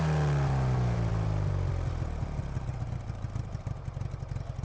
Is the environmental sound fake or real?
real